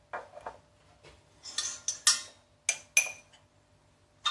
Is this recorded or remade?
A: recorded